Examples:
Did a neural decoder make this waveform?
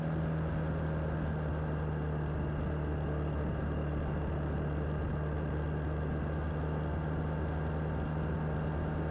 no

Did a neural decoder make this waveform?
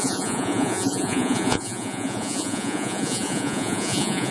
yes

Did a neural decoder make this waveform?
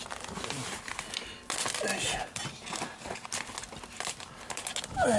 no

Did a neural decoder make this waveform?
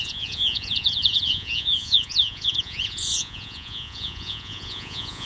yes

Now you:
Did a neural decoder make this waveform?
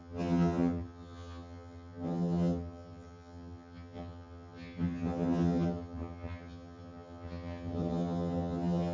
yes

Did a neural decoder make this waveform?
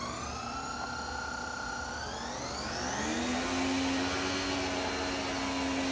no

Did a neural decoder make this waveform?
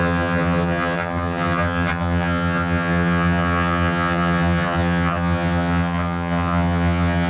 yes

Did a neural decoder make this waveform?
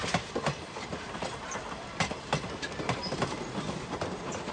no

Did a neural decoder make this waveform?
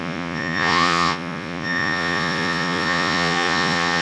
yes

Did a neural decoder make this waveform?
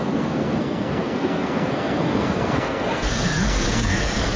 yes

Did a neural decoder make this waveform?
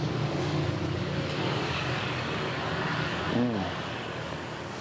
yes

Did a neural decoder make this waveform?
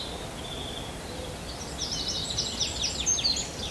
no